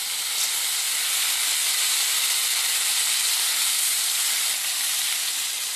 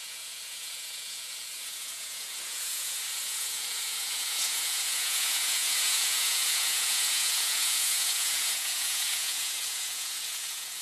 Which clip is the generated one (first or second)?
second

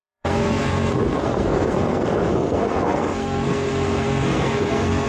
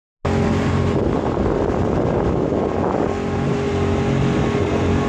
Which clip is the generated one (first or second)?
first